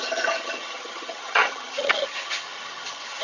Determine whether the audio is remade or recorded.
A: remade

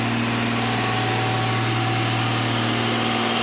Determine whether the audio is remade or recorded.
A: recorded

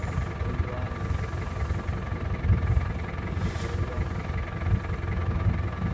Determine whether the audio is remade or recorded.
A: recorded